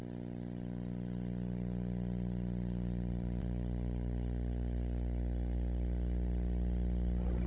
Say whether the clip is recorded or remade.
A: recorded